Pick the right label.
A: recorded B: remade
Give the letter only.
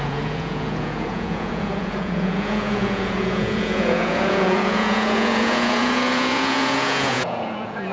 B